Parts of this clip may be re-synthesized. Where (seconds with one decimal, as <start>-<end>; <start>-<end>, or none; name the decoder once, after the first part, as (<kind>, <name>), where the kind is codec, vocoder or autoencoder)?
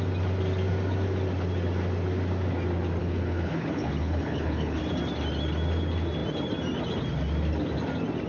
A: 3.0-4.8 (codec, HILCodec)